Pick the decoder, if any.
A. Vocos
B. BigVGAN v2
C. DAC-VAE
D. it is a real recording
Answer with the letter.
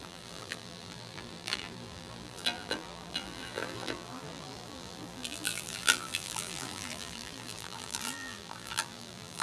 B